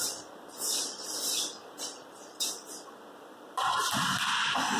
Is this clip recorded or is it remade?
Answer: remade